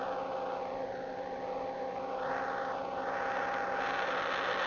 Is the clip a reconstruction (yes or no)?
no